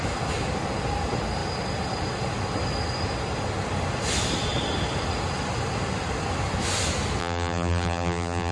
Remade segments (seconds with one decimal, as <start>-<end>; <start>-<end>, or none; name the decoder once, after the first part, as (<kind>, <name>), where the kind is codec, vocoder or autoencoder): 7.2-8.5 (vocoder, BigVGAN v2)